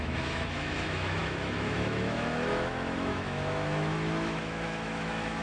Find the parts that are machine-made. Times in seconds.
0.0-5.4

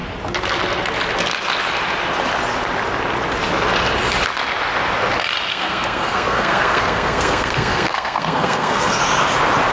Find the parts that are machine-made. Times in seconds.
5.5-9.0

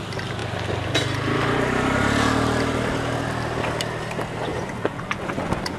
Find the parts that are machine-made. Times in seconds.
4.5-5.8